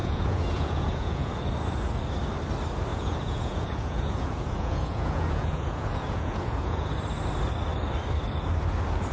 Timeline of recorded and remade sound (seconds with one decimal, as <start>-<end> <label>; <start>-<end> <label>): 0.0-1.5 remade; 1.5-2.9 recorded; 2.9-6.9 remade; 6.9-9.1 recorded